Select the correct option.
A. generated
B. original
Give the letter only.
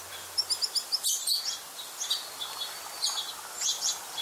B